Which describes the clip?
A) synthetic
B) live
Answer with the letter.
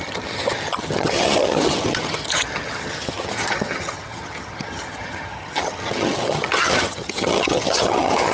A